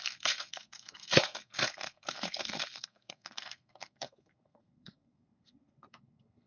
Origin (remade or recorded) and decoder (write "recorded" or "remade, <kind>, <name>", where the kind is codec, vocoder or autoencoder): remade, codec, SNAC